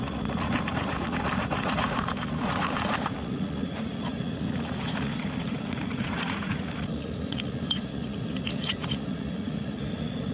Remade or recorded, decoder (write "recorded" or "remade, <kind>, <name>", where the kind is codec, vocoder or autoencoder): remade, vocoder, Vocos